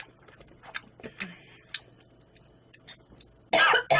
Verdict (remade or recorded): recorded